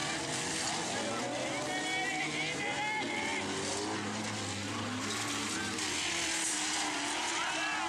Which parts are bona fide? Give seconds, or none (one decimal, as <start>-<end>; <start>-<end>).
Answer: 0.0-7.9